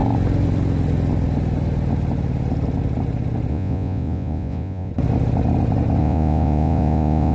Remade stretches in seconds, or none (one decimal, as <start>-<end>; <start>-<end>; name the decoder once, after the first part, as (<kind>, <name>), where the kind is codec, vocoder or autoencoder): 3.5-4.9 (vocoder, Vocos); 6.0-7.3